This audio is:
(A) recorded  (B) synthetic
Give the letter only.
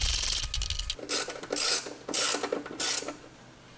A